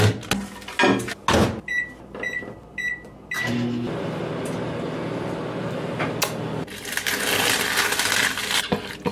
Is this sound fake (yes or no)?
no